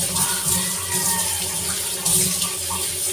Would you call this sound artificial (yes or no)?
no